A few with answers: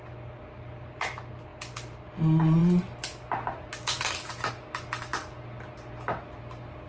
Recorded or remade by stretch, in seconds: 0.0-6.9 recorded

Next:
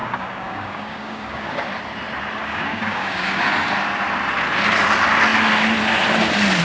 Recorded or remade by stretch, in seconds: 0.0-1.5 remade; 1.5-2.4 recorded; 2.4-3.5 remade; 3.5-6.6 recorded